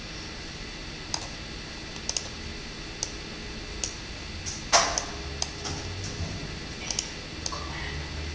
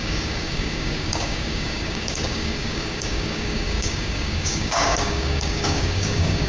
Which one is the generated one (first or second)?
second